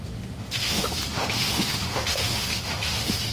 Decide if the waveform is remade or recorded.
remade